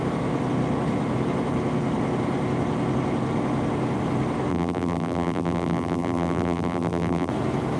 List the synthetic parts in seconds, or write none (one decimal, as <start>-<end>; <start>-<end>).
4.5-7.3